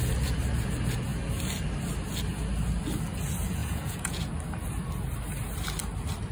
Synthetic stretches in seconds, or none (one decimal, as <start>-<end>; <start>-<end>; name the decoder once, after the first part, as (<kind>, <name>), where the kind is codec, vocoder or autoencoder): 3.6-4.3 (vocoder, Vocos)